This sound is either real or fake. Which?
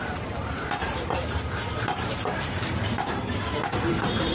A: fake